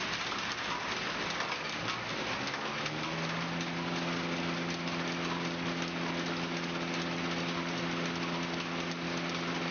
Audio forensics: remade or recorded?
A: recorded